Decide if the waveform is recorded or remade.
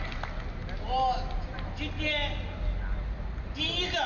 recorded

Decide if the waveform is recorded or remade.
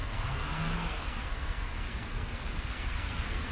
remade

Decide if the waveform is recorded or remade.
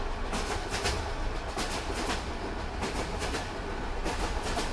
recorded